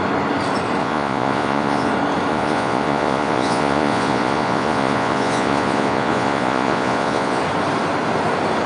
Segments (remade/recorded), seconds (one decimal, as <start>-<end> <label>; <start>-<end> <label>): 0.0-0.8 recorded; 0.8-1.9 remade; 1.9-2.3 recorded; 2.3-7.4 remade; 7.4-8.7 recorded